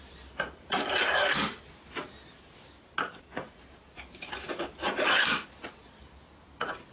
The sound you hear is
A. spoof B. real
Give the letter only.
B